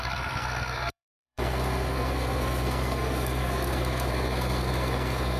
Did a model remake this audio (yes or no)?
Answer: yes